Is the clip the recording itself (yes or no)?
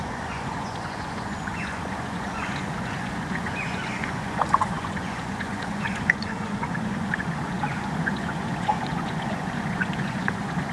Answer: no